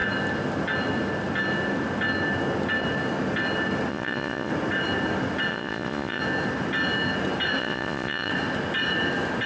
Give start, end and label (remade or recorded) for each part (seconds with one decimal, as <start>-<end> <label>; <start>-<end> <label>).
0.0-3.9 recorded; 3.9-4.5 remade; 4.5-5.5 recorded; 5.5-6.2 remade; 6.2-7.6 recorded; 7.6-8.3 remade; 8.3-9.5 recorded